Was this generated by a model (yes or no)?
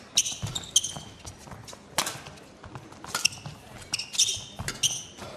no